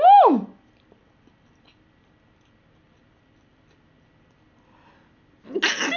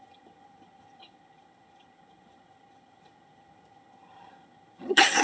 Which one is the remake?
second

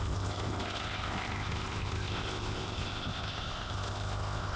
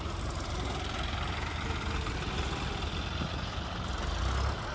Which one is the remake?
first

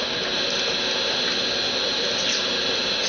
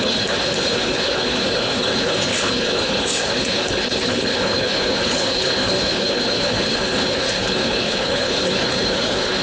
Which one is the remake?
second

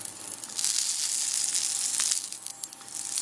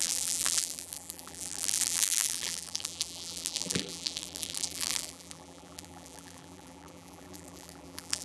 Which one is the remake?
second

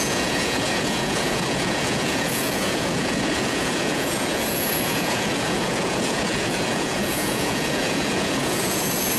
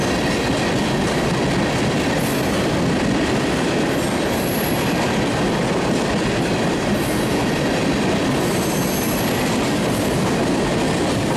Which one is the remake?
first